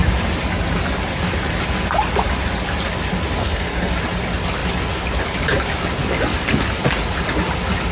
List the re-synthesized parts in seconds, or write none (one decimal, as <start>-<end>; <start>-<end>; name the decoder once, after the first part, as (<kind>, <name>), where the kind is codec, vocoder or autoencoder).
3.4-3.9 (codec, SNAC)